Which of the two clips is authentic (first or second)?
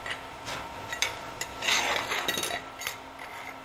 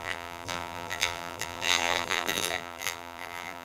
first